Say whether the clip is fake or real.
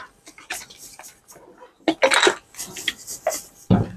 real